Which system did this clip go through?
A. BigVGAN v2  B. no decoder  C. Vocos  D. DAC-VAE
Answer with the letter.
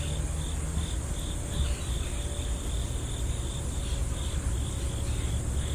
B